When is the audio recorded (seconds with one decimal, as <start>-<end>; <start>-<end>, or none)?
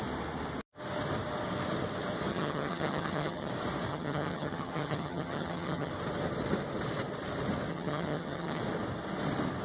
0.0-2.3; 3.5-3.9; 5.9-7.7; 8.6-9.6